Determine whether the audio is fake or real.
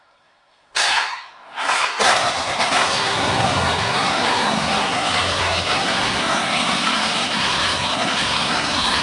fake